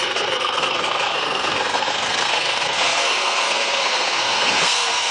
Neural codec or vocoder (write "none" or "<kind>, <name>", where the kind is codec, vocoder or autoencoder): codec, SNAC